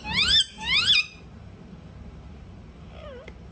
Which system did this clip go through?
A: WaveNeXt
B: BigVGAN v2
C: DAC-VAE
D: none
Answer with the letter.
B